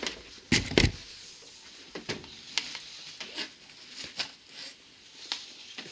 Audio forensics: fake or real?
real